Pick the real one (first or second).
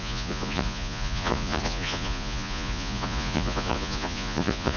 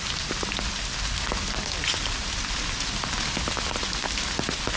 second